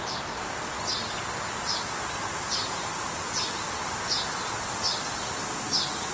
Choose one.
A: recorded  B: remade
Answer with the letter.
A